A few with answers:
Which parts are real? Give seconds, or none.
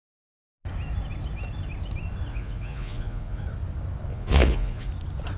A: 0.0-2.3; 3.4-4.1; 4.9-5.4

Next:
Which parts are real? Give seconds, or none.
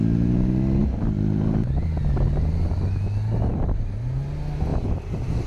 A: 0.0-4.7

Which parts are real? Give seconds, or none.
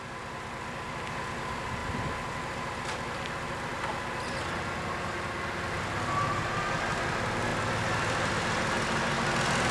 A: 0.0-9.7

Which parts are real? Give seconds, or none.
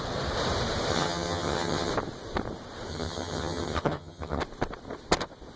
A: 0.0-0.9; 1.9-2.9; 4.4-5.6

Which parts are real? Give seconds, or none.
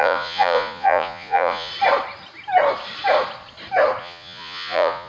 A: 1.7-4.0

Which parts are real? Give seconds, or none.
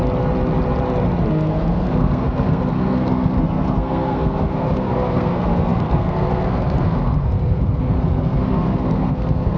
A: 0.0-1.3